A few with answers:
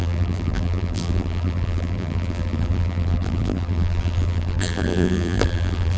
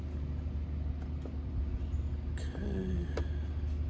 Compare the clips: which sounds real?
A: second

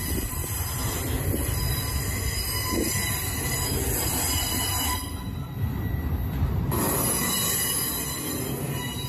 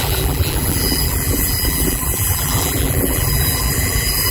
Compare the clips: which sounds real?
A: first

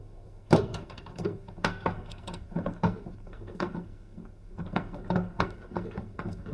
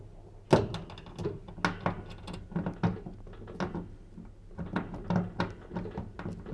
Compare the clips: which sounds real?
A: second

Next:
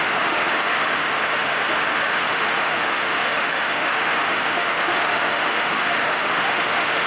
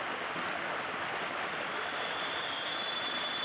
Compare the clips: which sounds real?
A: second